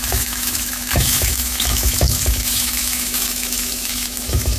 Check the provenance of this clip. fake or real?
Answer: fake